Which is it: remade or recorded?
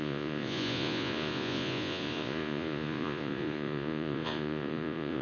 remade